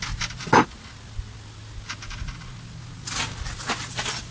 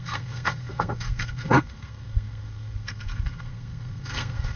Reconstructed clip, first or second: second